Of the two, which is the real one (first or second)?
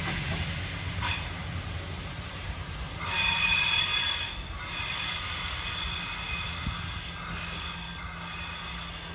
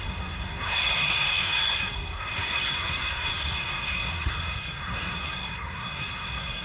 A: first